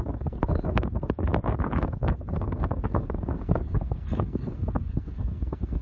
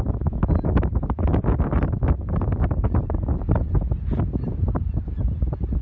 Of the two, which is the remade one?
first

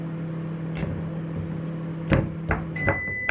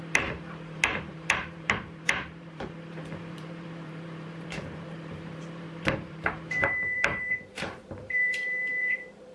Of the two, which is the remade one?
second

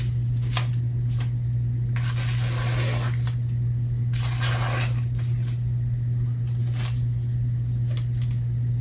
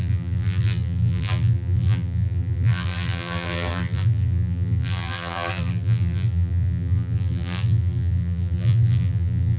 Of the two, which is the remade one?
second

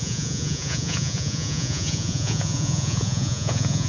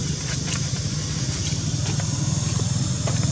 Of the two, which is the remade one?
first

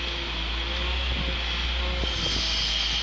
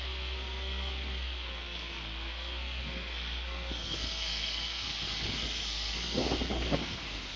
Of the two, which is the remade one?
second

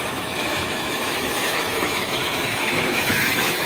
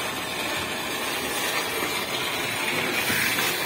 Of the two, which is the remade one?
first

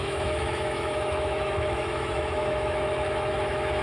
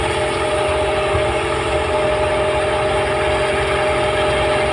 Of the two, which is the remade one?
first